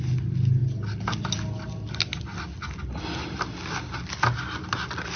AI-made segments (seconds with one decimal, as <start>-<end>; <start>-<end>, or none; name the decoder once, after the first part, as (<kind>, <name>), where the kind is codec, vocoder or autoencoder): none